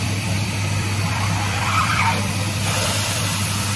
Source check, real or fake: fake